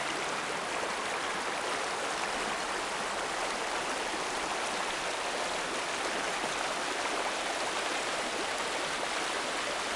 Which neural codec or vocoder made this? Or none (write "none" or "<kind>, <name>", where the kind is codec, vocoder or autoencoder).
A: none